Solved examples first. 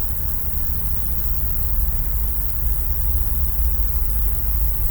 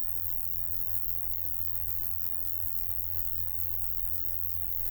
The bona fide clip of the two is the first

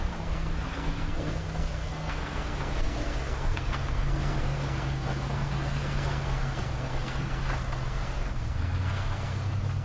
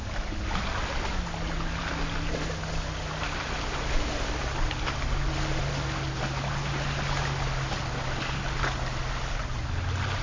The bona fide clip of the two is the second